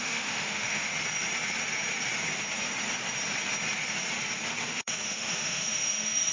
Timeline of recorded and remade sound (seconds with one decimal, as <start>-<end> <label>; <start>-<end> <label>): 0.0-0.9 remade; 0.9-4.7 recorded; 4.7-6.3 remade